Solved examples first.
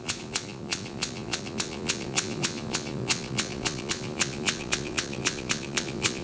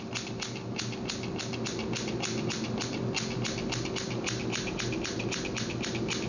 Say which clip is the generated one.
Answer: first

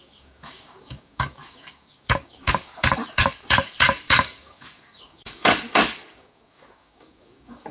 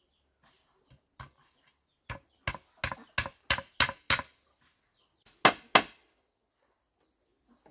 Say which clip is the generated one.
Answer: first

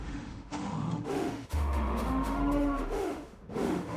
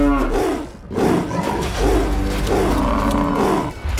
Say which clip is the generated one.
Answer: first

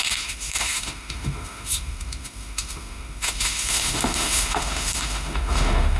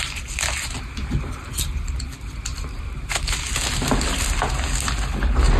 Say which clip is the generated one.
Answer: first